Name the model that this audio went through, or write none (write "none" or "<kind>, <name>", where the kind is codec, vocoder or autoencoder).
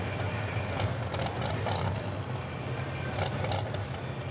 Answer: none